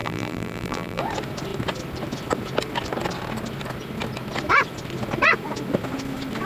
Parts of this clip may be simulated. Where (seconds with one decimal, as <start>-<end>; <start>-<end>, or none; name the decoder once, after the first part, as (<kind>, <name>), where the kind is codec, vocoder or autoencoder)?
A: 0.0-1.0 (vocoder, BigVGAN v2)